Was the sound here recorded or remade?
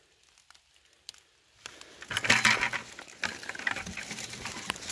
recorded